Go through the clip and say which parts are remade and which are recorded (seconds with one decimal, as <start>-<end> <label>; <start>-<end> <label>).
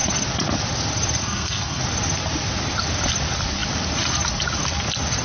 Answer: 0.0-1.2 recorded; 1.2-1.8 remade; 1.8-5.2 recorded